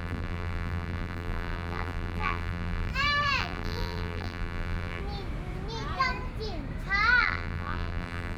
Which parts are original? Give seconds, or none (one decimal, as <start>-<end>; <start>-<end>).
2.9-3.4; 5.0-7.2